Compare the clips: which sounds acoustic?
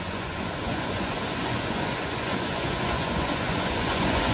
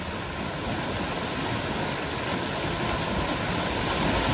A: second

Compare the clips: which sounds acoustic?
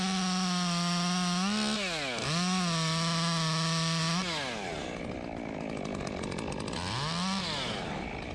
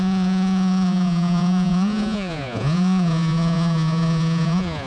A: first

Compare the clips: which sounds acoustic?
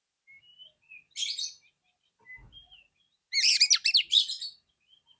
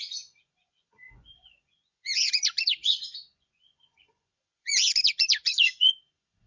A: first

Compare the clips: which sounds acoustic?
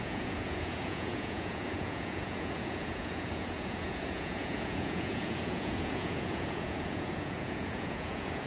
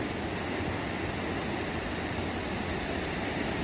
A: second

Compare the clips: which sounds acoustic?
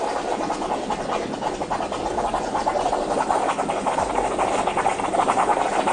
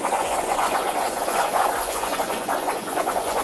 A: first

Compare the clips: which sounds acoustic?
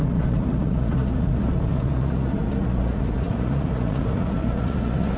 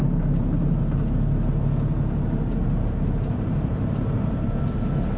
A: second